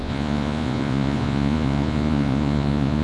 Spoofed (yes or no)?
yes